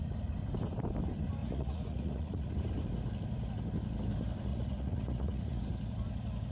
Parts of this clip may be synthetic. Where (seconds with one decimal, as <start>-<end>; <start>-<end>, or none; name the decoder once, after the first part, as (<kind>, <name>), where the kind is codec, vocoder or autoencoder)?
1.4-2.5 (vocoder, Vocos); 4.5-5.6